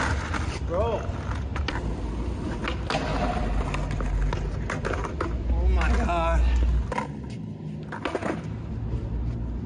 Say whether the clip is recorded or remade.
recorded